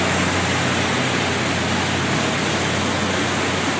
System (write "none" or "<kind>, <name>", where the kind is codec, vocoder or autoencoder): none